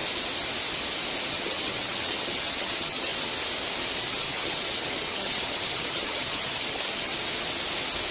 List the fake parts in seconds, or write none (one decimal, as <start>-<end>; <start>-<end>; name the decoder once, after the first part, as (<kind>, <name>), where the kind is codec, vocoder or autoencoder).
1.3-3.1 (vocoder, HiFi-GAN); 4.0-7.1

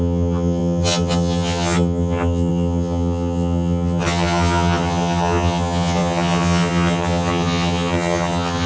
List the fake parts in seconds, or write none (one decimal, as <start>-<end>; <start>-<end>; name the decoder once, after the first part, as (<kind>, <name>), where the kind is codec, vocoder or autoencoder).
0.0-8.7 (vocoder, HiFi-GAN)

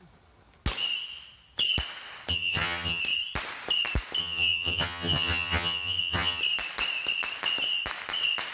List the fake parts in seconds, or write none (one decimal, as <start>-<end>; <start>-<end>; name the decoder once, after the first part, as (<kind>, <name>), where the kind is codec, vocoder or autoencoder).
2.3-3.0 (vocoder, HiFi-GAN); 4.2-6.4

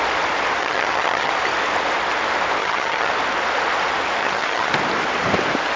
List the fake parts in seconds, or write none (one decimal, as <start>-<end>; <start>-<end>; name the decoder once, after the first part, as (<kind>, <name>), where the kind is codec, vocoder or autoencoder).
0.6-1.3 (vocoder, HiFi-GAN); 2.6-3.1; 4.2-4.7